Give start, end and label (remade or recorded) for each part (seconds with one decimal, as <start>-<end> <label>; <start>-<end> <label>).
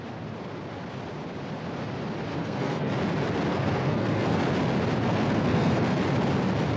0.0-2.4 recorded; 2.4-2.9 remade; 2.9-3.5 recorded; 3.5-4.4 remade; 4.4-5.1 recorded; 5.1-6.0 remade; 6.0-6.8 recorded